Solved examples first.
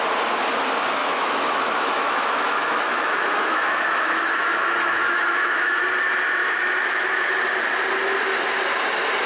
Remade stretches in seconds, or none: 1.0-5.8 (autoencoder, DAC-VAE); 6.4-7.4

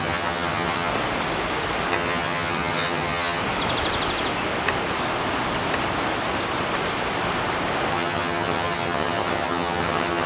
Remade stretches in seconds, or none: 0.0-0.9 (vocoder, HiFi-GAN); 1.9-3.4; 7.9-10.3

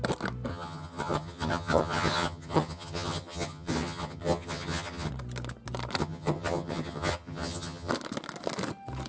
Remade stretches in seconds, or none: 0.5-5.1 (vocoder, HiFi-GAN); 6.0-7.9

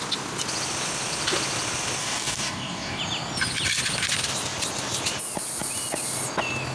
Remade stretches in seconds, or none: 2.0-3.0 (codec, DAC)

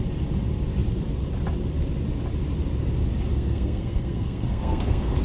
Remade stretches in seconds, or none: 3.3-5.2 (codec, SNAC)

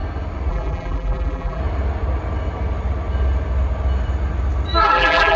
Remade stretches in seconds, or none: 0.5-1.6 (vocoder, BigVGAN v2); 4.8-5.4

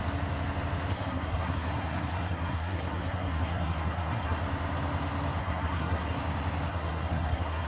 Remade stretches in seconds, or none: 0.9-4.4 (codec, SNAC); 5.4-6.2; 6.7-7.7